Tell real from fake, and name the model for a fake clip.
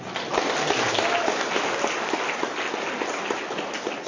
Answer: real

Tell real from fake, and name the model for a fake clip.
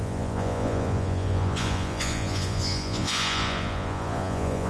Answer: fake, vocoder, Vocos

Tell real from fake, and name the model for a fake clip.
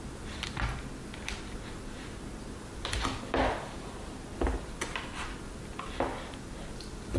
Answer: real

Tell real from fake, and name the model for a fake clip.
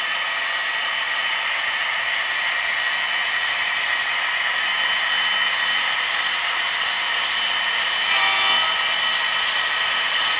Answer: real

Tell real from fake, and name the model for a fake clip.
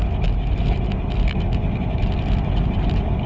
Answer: real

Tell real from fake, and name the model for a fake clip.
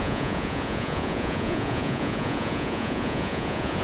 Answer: fake, vocoder, Vocos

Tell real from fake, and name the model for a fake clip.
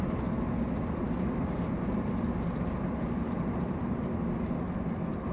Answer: real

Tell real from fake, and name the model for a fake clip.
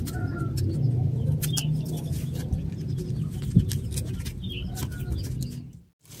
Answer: real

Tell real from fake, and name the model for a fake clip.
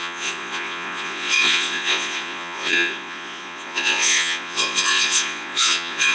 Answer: fake, vocoder, Vocos